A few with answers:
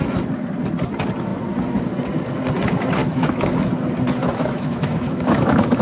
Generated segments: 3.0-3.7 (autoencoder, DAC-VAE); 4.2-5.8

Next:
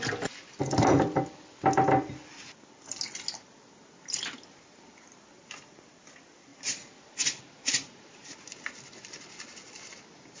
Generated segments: none

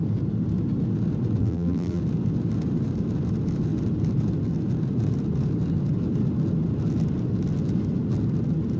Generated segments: 1.4-2.0 (vocoder, BigVGAN v2)

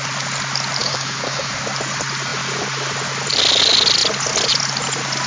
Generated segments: 0.8-1.5 (codec, DAC)

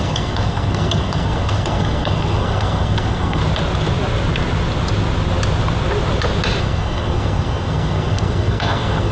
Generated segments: 0.0-3.4 (codec, SNAC); 6.6-9.1